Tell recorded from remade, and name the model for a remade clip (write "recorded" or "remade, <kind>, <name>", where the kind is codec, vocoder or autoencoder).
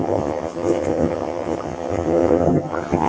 remade, vocoder, HiFi-GAN